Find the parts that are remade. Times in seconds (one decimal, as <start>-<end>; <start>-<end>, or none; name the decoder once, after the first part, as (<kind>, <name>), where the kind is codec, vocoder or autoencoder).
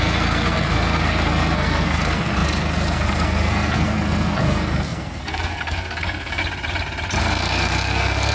0.0-6.4 (codec, SNAC); 7.2-8.3